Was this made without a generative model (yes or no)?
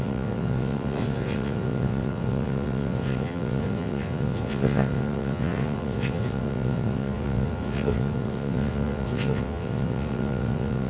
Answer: no